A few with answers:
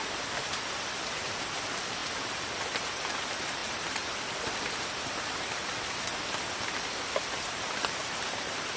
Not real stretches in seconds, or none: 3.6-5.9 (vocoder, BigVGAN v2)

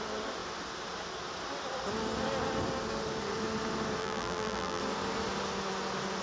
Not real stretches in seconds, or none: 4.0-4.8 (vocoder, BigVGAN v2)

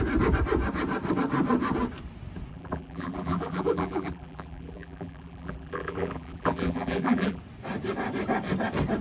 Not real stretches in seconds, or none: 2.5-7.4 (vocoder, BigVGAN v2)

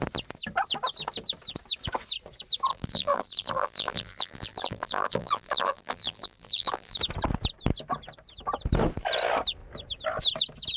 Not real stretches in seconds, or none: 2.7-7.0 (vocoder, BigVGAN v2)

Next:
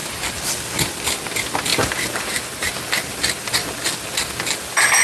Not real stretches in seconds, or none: 1.7-2.7 (vocoder, BigVGAN v2)